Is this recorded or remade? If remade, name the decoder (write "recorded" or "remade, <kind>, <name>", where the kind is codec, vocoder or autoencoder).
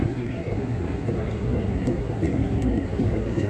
remade, codec, SNAC